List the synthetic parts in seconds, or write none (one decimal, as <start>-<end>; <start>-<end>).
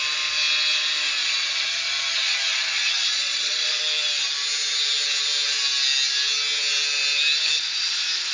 1.2-3.8